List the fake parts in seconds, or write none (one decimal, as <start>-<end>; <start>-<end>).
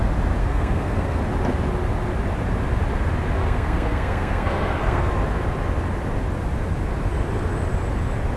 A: 0.4-1.2; 3.4-5.1